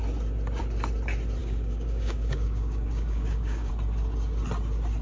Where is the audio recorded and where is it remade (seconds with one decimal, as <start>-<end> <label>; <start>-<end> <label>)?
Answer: 0.0-1.4 recorded; 1.4-3.7 remade; 3.7-5.0 recorded